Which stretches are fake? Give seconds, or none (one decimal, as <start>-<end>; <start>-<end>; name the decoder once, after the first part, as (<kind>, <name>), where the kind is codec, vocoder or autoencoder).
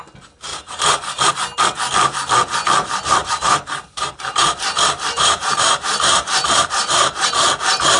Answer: 0.5-1.3 (vocoder, BigVGAN v2); 3.2-7.3